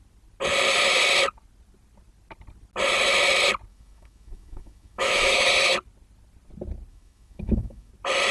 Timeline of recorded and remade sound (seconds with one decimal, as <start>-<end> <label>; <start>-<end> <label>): 0.0-3.7 recorded; 3.7-5.5 remade; 5.5-6.9 recorded; 6.9-7.9 remade; 7.9-8.3 recorded